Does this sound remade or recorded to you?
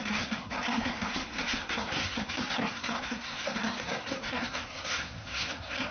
remade